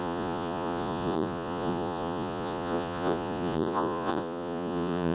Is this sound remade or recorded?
remade